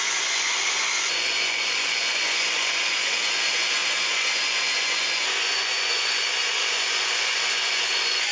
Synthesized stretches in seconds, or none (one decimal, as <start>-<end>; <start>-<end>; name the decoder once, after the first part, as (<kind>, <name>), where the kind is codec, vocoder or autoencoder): 0.0-8.3 (vocoder, Vocos)

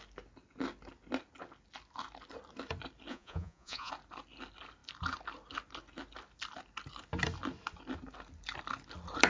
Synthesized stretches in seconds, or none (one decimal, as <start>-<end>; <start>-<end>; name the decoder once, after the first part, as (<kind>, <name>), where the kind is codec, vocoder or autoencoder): 3.1-3.9 (vocoder, Vocos)

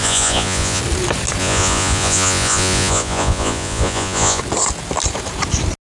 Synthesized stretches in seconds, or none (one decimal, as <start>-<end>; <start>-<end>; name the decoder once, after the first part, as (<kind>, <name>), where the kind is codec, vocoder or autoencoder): 0.0-0.8 (vocoder, Vocos); 1.4-4.4